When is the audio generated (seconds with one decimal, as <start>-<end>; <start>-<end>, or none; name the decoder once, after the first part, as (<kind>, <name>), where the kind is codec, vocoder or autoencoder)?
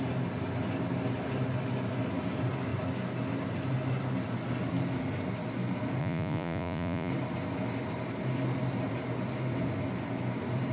6.0-7.1 (vocoder, Vocos)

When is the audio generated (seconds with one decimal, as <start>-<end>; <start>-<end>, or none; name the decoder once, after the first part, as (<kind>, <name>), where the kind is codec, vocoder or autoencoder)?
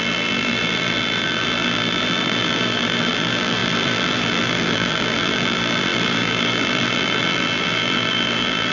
0.0-8.7 (vocoder, BigVGAN v2)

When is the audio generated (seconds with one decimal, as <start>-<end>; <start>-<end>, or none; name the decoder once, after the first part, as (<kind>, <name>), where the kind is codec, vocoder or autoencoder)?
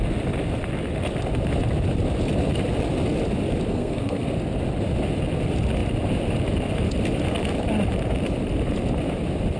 3.7-4.3 (codec, SNAC)